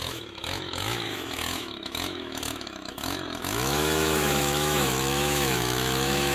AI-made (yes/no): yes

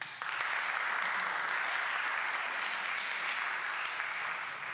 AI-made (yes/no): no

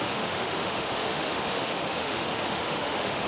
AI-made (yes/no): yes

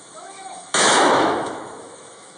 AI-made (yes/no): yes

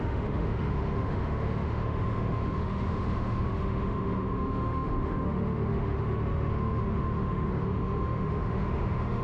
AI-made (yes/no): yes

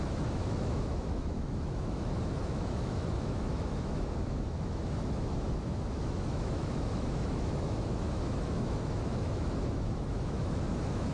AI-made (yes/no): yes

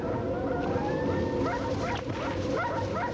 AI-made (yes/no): no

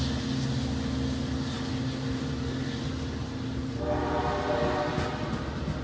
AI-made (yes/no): no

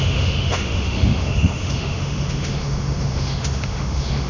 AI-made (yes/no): yes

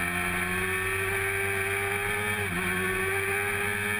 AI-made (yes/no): no